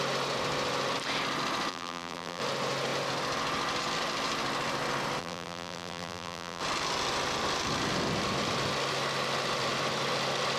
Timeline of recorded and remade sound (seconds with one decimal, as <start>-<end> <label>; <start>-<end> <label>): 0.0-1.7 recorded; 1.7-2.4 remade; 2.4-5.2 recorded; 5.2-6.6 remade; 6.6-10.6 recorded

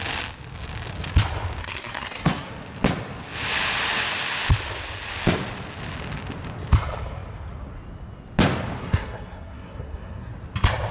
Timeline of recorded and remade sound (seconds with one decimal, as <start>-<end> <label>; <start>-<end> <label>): 0.0-1.6 recorded; 1.6-2.5 remade; 2.5-8.8 recorded; 8.8-10.3 remade; 10.3-10.9 recorded

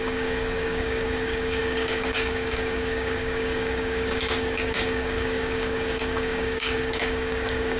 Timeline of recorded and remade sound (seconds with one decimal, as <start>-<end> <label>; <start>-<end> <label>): 0.0-7.8 remade